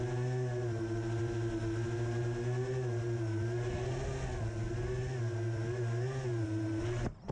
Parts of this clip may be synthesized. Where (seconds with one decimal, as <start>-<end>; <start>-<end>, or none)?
none